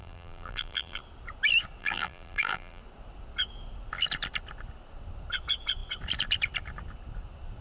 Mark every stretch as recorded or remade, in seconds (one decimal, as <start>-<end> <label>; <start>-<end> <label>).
0.0-1.0 remade; 1.0-1.8 recorded; 1.8-2.8 remade; 2.8-7.6 recorded